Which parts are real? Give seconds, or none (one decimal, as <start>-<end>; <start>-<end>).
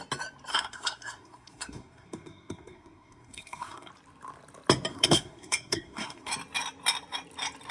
0.0-0.5; 3.9-4.9; 6.3-7.7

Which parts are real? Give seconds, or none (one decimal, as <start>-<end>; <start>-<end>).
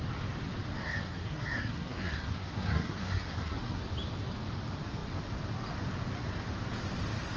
0.0-0.8; 3.8-7.4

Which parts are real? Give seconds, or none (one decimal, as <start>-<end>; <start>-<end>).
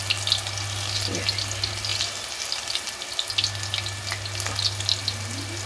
0.0-5.7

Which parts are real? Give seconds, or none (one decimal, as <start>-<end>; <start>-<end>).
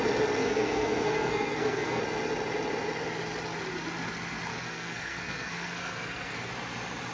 0.0-0.4; 2.0-4.5; 6.5-7.1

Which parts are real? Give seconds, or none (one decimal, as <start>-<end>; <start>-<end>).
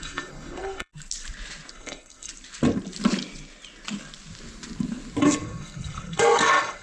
0.9-1.7; 2.3-5.2